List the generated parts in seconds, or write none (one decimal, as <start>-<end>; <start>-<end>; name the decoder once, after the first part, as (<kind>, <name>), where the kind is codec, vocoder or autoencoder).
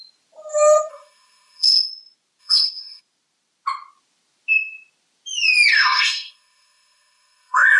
0.9-1.9 (codec, SNAC); 2.4-3.0; 5.7-7.8